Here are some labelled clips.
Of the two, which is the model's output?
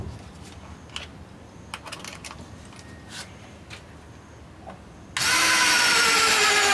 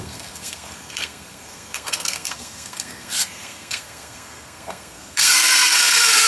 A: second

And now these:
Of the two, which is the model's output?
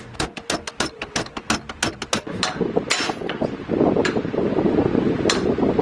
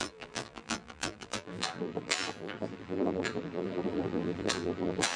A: second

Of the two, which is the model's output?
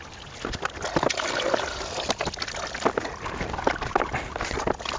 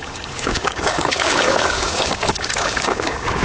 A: second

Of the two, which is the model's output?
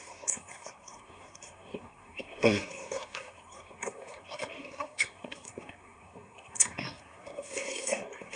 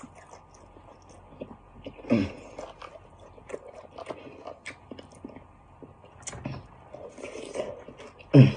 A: first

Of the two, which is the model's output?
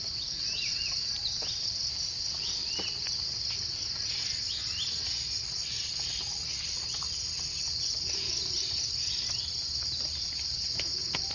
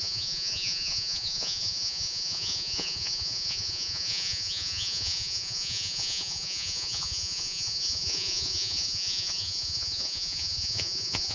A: second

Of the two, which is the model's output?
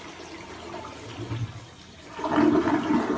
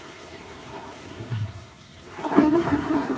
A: second